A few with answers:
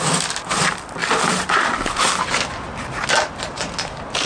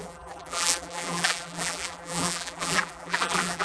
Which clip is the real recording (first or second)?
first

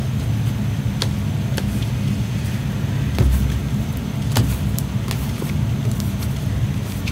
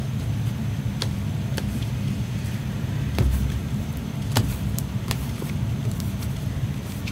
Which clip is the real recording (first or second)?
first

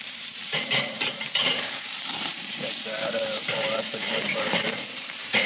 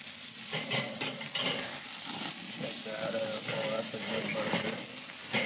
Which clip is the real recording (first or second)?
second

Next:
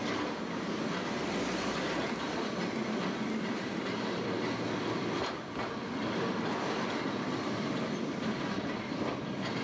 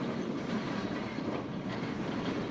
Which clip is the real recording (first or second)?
first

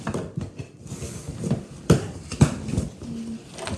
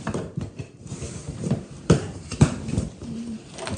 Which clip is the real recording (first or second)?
first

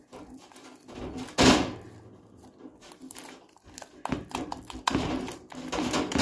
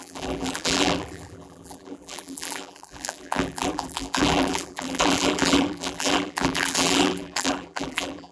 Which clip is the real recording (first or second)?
first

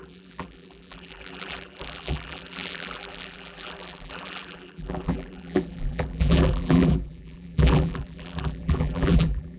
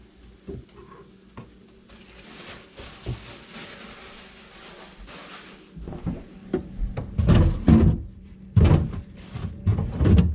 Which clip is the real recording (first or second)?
second